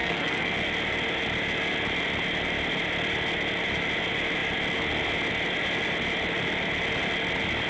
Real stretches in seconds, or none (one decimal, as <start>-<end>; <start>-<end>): 0.5-7.7